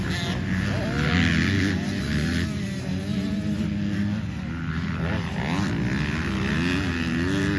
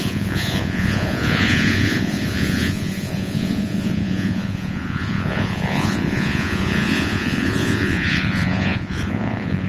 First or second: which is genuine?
first